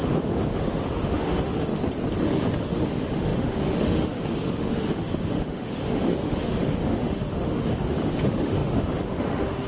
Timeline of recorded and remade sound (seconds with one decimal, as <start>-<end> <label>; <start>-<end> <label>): 0.0-1.7 remade; 1.7-2.2 recorded; 2.2-9.7 remade